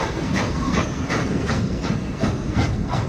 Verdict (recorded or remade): remade